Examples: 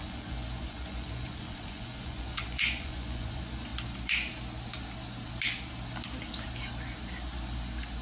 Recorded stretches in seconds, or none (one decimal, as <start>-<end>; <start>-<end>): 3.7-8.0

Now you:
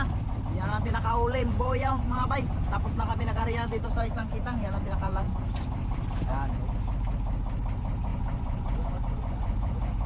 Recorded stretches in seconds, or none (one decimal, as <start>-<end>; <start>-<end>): 0.0-0.7; 5.7-8.1

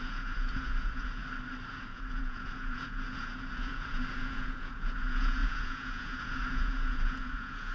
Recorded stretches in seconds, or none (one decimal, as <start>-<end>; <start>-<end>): 1.2-1.7

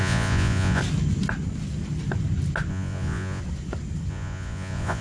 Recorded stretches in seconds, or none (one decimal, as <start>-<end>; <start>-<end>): 0.8-2.7; 3.4-4.1

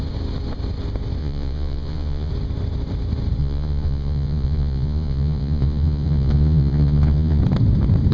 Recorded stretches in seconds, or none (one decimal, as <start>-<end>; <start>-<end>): 0.0-1.2; 2.3-3.4; 7.4-8.1

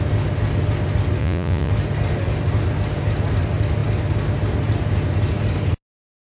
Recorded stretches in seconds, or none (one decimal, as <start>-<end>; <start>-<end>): 0.0-1.2; 1.7-6.3

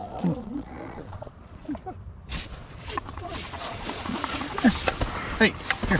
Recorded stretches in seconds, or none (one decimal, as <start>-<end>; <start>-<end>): 1.7-2.6; 4.5-6.0